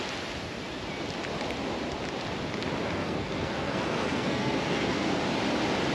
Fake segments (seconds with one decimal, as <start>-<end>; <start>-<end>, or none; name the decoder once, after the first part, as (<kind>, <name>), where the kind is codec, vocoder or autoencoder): 3.0-5.2 (codec, SNAC)